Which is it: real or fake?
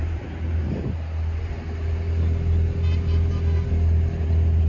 real